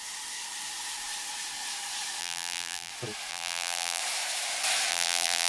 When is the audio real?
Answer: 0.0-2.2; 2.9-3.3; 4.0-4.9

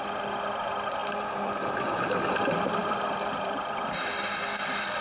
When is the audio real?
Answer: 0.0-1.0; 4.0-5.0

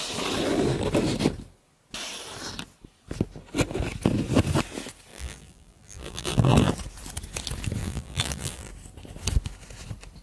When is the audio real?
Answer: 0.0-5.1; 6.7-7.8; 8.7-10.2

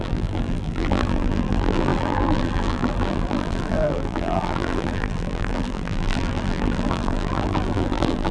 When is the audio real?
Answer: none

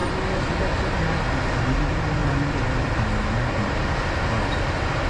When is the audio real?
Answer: 0.0-2.2; 3.0-5.1